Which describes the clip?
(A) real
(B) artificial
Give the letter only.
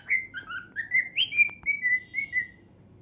A